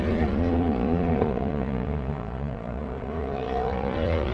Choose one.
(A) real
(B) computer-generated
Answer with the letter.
B